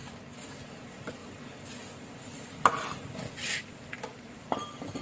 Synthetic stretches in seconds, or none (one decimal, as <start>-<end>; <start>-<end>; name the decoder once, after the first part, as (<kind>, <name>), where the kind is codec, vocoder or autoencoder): 0.0-1.2 (vocoder, BigVGAN v2); 4.2-5.0